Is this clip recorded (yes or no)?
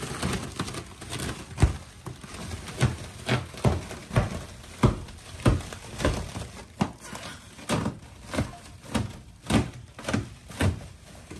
yes